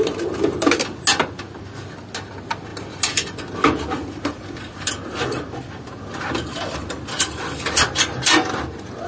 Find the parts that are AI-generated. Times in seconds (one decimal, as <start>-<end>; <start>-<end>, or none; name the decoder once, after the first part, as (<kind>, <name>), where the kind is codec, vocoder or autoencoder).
none

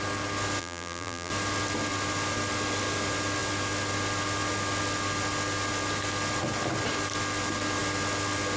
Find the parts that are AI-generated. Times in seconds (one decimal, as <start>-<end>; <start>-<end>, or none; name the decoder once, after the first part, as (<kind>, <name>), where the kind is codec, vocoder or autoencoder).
0.6-1.3 (vocoder, BigVGAN v2)

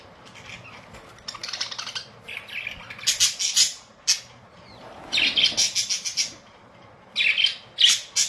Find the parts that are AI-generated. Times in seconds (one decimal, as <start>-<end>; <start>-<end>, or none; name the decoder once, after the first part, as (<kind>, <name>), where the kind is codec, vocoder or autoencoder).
none

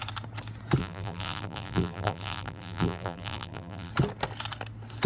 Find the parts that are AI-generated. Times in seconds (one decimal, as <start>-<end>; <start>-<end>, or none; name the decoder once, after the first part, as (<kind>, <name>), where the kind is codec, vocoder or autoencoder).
0.8-3.9 (vocoder, BigVGAN v2)

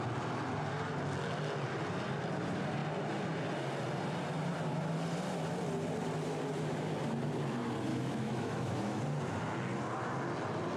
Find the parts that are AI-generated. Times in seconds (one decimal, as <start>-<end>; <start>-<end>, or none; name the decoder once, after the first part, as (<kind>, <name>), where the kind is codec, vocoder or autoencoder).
7.9-9.0 (autoencoder, DAC-VAE)